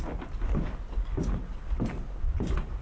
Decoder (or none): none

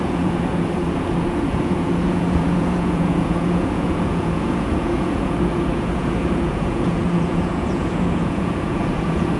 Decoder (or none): vocoder, Vocos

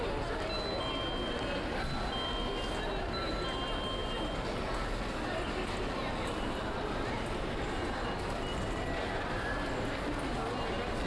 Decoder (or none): none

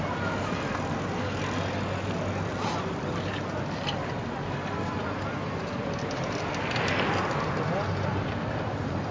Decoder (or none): none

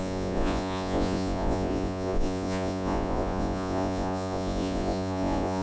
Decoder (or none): vocoder, Vocos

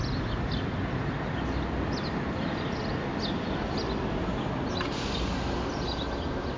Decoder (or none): none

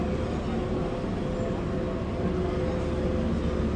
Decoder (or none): none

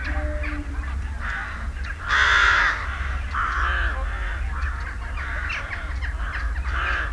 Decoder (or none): none